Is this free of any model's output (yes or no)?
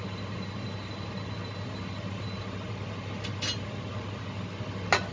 yes